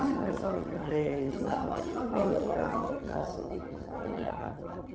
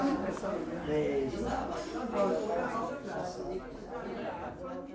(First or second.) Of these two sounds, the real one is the second